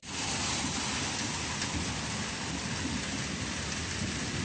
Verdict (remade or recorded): recorded